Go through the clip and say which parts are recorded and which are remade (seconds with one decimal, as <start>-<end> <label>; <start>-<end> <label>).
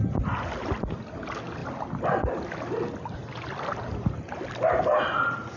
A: 0.0-5.6 recorded